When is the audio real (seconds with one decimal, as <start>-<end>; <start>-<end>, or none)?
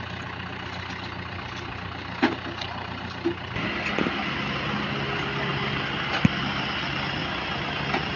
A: 0.0-8.2